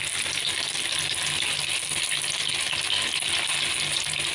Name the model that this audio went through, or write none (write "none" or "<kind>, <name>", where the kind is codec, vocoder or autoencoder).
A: none